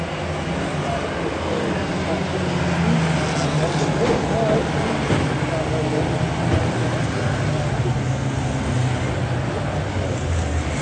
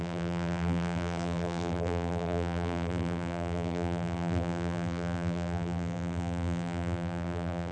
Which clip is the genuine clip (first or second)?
first